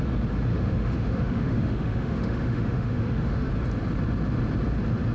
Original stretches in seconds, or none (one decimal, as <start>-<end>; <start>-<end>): 0.0-0.5; 3.5-5.1